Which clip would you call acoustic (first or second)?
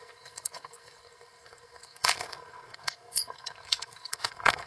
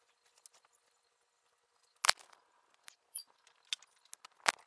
second